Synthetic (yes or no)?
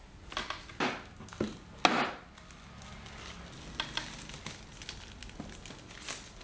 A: no